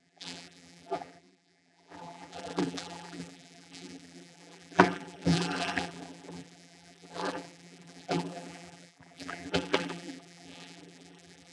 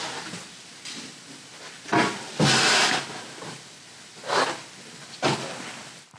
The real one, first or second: second